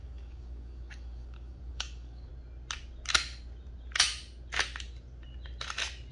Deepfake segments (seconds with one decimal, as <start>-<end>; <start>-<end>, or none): 0.0-2.3